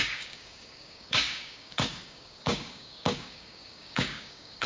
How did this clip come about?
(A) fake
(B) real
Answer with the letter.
A